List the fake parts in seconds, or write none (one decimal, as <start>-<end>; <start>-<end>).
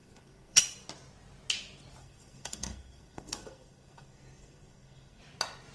0.0-0.6; 2.0-5.2